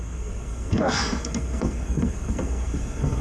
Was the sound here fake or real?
fake